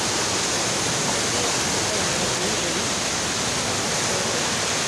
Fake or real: real